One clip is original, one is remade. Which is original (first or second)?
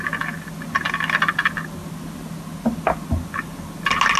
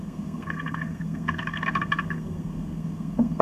first